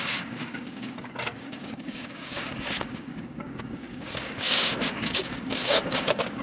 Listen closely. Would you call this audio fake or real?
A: fake